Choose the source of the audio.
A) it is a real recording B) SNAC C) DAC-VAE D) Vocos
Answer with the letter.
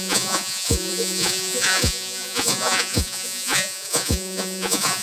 D